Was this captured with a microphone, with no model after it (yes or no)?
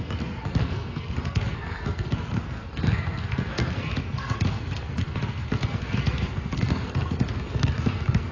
no